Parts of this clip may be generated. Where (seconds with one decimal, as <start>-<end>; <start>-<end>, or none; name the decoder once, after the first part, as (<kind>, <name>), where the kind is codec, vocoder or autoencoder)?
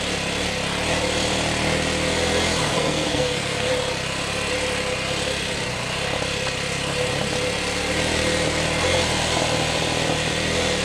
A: 2.6-3.7 (codec, SNAC)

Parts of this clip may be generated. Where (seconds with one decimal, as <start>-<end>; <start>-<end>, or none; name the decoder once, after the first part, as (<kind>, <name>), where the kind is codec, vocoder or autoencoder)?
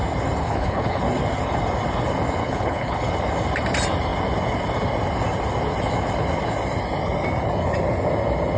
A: 0.4-1.0 (codec, HILCodec); 2.4-3.1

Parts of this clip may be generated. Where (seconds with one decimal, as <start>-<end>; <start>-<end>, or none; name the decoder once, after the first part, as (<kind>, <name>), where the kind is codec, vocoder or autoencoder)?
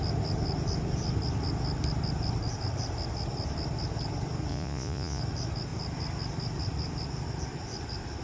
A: 4.5-5.2 (vocoder, Vocos)